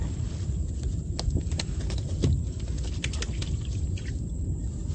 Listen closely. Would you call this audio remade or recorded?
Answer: recorded